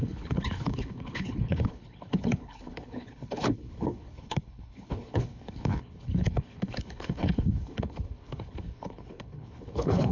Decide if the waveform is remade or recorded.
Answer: remade